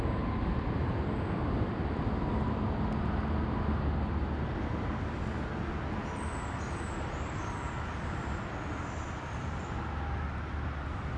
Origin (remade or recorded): recorded